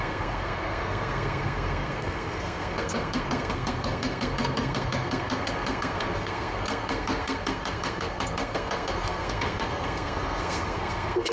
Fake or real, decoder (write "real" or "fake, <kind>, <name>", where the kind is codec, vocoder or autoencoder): fake, codec, SNAC